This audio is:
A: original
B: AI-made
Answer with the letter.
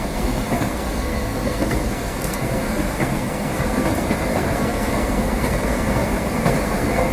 B